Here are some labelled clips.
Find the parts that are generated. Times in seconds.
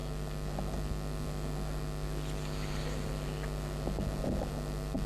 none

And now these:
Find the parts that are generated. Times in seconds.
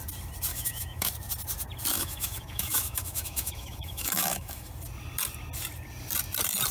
0.5-1.1 (autoencoder, DAC-VAE); 1.9-4.7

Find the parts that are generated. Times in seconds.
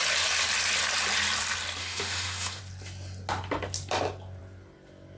1.8-2.6 (autoencoder, DAC-VAE)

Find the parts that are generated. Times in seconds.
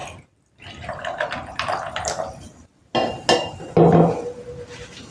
none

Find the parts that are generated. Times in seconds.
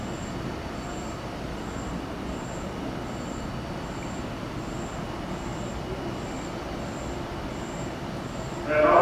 none